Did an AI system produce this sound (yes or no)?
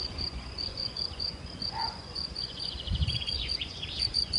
yes